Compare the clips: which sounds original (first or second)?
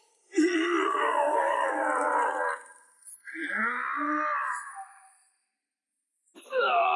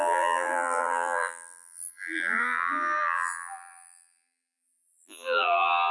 first